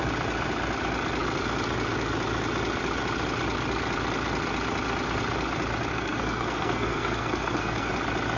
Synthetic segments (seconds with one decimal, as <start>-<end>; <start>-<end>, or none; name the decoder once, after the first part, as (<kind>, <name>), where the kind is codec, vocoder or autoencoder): 5.9-7.9 (codec, SNAC)